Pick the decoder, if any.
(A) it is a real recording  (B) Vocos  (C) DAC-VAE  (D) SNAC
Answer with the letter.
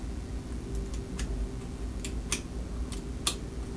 A